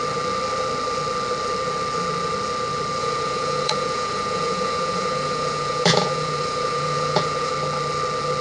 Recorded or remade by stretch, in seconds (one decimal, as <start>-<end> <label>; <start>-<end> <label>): 0.0-3.0 recorded; 3.0-7.5 remade; 7.5-8.4 recorded